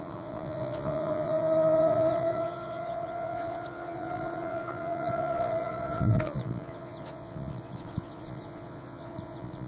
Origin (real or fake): fake